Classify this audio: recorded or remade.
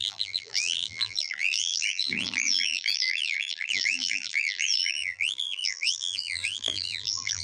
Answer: remade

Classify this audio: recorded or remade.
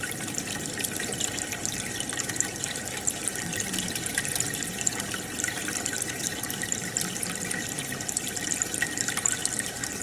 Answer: remade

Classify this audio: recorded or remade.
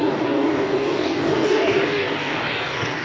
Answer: remade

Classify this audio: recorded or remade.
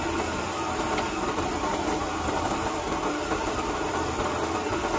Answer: recorded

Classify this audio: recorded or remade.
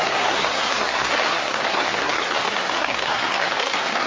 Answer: remade